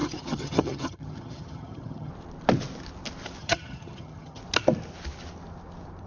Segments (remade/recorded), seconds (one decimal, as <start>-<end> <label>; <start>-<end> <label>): 0.0-2.1 remade; 2.1-3.4 recorded; 3.4-4.4 remade; 4.4-6.1 recorded